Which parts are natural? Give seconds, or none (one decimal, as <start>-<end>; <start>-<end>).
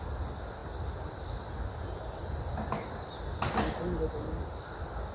0.0-5.1